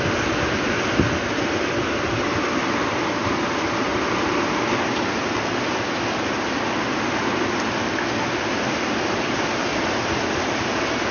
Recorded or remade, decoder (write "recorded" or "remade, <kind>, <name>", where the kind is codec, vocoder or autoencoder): recorded